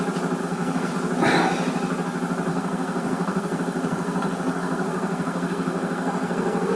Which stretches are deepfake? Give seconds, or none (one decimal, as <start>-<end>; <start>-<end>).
0.4-0.9; 2.5-6.8